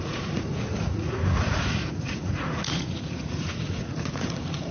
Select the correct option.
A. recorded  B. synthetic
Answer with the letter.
B